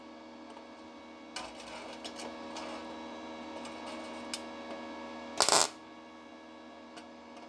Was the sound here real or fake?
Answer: real